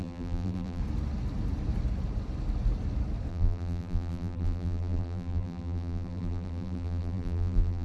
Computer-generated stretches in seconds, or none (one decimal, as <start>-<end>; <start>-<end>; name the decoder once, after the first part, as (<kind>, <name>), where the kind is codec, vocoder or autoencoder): 0.0-0.8 (vocoder, BigVGAN v2); 3.3-7.8

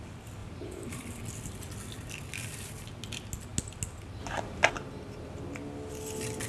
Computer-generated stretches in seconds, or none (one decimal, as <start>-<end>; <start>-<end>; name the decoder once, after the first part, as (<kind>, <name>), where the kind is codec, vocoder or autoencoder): 0.4-1.0 (vocoder, BigVGAN v2)

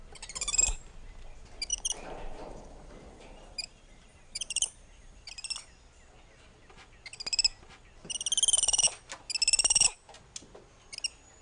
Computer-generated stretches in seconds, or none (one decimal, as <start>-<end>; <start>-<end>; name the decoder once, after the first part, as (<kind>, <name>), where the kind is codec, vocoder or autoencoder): 1.7-5.3 (vocoder, BigVGAN v2)

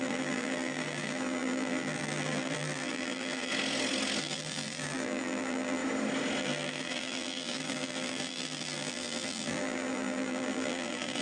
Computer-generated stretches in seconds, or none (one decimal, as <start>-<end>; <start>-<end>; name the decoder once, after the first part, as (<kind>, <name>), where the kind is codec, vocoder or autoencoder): 0.0-3.5 (vocoder, BigVGAN v2); 4.2-5.8; 6.4-11.2

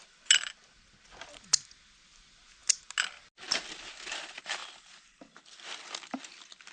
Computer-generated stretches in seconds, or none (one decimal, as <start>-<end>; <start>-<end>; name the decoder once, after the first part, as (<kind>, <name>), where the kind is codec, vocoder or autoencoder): none

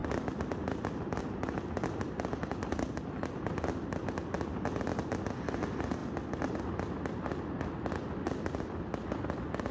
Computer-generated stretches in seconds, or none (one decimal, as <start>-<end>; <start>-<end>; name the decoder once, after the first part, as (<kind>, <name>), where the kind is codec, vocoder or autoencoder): none

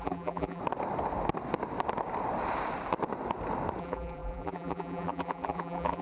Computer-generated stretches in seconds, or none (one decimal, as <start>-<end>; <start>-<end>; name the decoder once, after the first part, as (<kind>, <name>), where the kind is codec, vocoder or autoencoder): 0.0-0.6 (vocoder, BigVGAN v2); 3.8-6.0

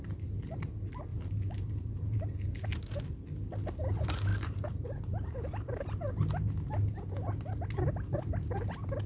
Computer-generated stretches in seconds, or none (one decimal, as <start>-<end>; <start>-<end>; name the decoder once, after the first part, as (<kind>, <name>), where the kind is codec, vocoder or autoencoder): 1.1-2.2 (vocoder, BigVGAN v2); 4.3-6.1